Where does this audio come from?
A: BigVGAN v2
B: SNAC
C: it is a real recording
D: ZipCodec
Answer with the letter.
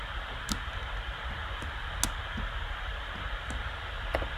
C